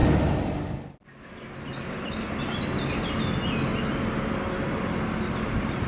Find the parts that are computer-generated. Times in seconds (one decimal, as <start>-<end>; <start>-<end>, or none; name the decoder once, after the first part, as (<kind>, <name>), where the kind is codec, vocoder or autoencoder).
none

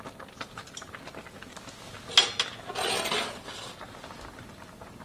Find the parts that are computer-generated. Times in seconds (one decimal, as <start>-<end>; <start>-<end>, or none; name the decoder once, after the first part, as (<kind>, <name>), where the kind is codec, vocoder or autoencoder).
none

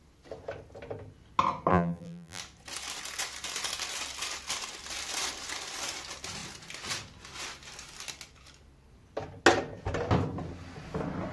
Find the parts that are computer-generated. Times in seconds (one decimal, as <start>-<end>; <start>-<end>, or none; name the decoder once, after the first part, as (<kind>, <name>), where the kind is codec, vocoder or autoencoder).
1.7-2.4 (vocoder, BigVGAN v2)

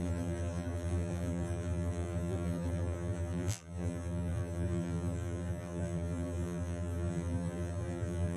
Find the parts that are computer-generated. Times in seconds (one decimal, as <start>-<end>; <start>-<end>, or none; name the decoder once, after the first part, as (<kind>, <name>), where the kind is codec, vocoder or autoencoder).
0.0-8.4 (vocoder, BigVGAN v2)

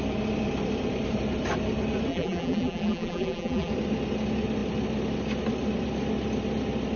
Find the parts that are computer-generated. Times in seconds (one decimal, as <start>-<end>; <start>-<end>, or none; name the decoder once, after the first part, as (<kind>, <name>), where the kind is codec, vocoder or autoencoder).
2.1-3.7 (vocoder, BigVGAN v2)